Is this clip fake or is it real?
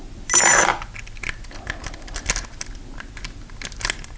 real